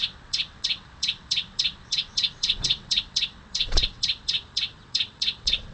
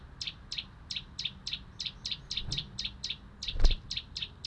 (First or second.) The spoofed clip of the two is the first